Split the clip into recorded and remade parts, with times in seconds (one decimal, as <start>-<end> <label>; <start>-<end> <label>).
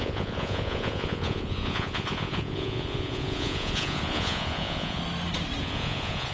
0.0-5.0 remade; 5.0-5.6 recorded; 5.6-6.3 remade